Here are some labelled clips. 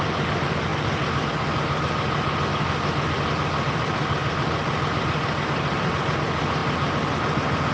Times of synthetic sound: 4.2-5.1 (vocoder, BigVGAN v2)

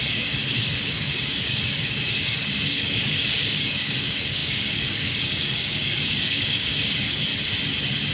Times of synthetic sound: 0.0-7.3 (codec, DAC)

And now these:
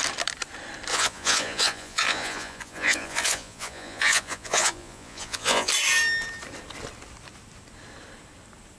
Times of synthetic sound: 0.9-5.7 (vocoder, Vocos)

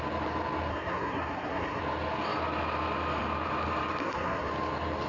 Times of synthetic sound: 0.7-1.8 (codec, SNAC); 4.0-4.5

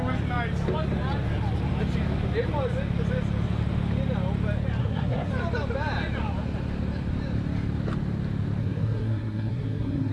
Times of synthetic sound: 4.8-5.3 (codec, SNAC); 8.6-10.1

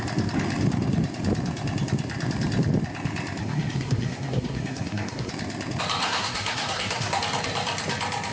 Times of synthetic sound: 3.4-5.3 (codec, SNAC); 6.0-7.2